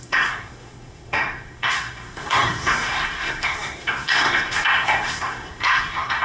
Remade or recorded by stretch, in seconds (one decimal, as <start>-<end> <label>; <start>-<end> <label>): 0.0-6.2 remade